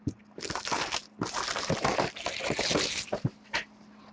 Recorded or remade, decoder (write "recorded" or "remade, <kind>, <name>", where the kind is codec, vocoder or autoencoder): recorded